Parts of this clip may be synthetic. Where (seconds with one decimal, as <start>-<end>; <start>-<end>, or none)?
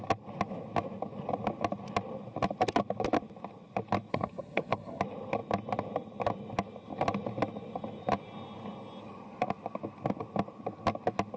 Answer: 4.1-5.0